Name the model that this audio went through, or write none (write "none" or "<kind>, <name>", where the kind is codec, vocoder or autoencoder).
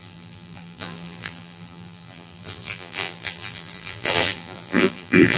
vocoder, BigVGAN v2